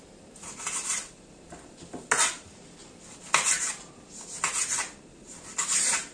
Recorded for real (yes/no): yes